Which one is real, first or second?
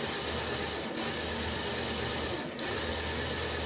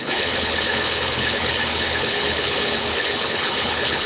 first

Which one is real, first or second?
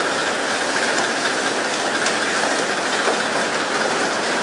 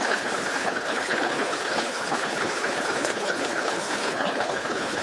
first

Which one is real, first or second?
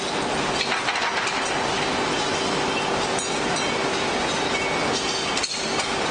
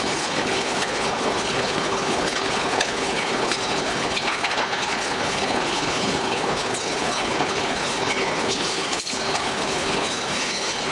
first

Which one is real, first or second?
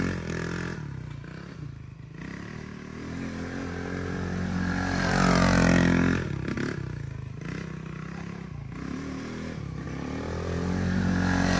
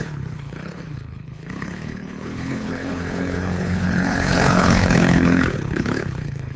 first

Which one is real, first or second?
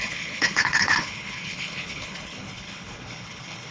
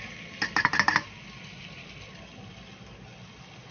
second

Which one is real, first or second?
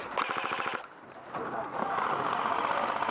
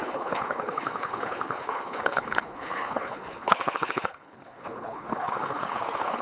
first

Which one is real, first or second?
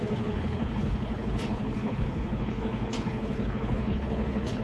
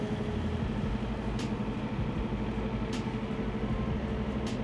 second